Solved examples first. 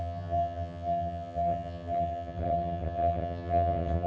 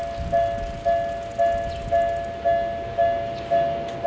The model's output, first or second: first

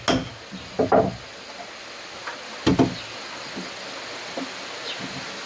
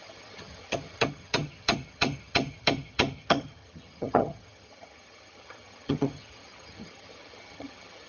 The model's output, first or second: second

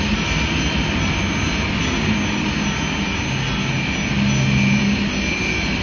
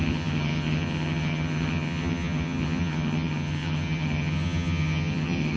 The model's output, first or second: second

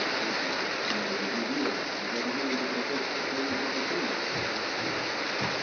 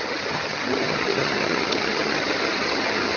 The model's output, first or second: second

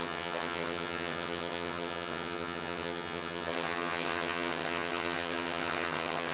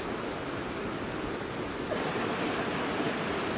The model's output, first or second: first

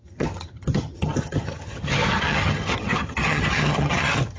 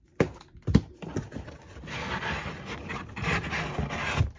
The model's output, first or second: first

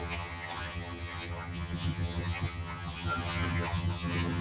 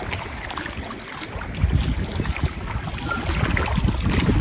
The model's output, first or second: first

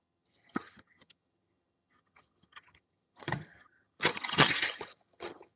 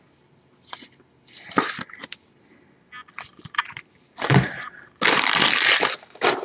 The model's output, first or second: first